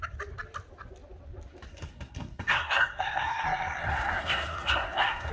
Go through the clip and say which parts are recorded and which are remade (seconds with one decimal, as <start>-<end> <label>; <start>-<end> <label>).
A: 0.0-1.7 recorded; 1.7-5.3 remade

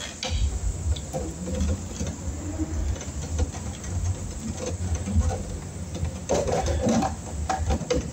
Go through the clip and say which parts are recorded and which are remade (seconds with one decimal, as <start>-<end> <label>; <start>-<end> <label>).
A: 0.0-8.1 recorded